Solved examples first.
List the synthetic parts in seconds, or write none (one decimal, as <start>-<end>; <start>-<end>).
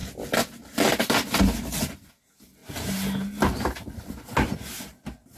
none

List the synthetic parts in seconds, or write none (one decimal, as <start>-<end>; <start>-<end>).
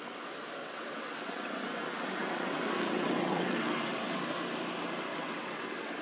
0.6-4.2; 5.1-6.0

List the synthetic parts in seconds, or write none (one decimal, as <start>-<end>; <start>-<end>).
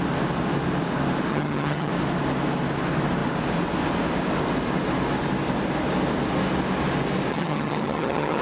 1.3-1.9; 7.3-8.4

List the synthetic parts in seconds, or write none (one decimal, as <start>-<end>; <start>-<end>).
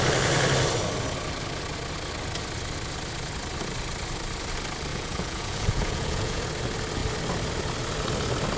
4.9-6.4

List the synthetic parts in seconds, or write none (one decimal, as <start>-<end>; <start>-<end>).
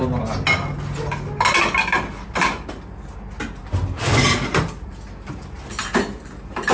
none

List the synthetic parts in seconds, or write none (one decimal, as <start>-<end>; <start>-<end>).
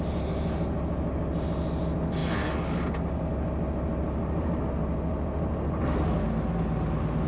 none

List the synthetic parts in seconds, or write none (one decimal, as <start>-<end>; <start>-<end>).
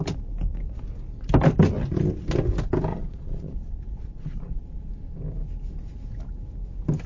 2.9-4.9